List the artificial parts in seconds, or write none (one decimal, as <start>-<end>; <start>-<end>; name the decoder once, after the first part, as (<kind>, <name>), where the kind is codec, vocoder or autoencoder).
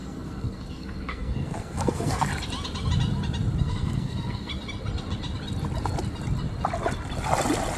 0.0-2.3 (codec, SNAC); 3.6-4.5